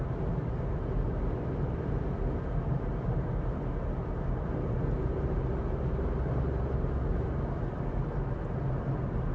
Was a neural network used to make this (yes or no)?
no